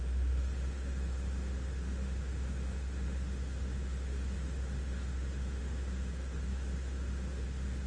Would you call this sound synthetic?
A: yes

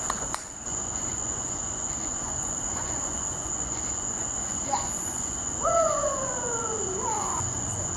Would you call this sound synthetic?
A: yes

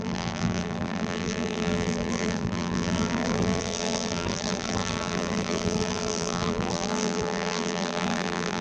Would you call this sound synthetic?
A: yes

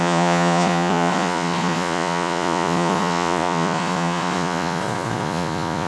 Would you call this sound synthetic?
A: yes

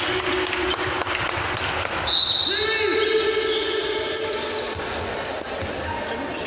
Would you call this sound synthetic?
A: no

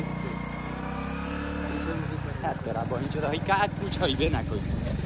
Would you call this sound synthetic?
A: no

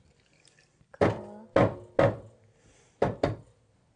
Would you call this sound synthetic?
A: no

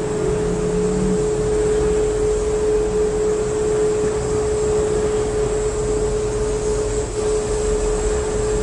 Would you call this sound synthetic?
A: no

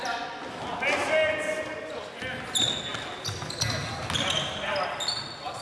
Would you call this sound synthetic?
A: no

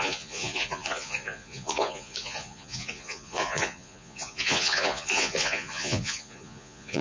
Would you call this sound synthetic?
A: yes